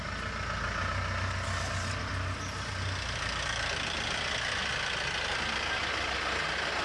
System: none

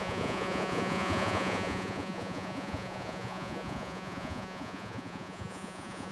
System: vocoder, Vocos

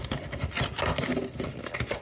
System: none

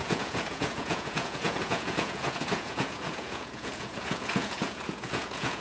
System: vocoder, Vocos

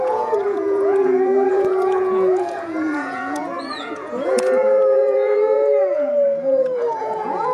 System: vocoder, Vocos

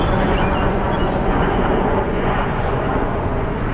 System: vocoder, Vocos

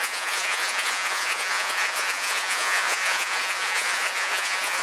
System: vocoder, Vocos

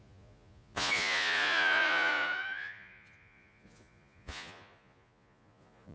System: vocoder, Vocos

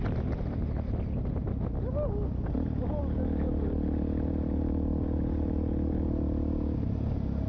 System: none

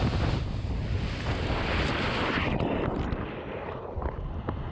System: none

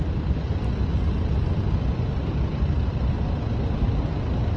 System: none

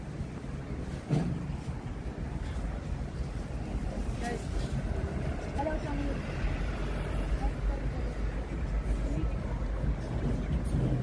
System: none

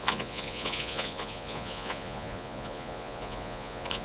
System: vocoder, Vocos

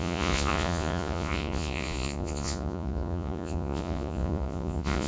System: vocoder, Vocos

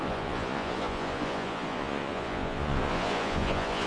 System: vocoder, Vocos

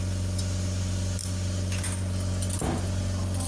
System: none